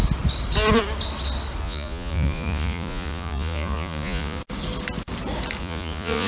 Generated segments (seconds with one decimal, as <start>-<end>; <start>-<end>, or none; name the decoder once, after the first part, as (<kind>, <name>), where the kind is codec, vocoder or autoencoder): 1.6-4.4 (vocoder, Vocos); 5.6-6.3